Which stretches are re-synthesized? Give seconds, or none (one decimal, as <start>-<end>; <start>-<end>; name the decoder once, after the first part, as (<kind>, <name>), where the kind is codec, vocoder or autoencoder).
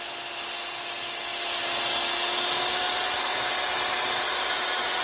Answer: none